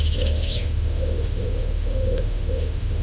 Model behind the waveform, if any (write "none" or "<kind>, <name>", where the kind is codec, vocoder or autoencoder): autoencoder, DAC-VAE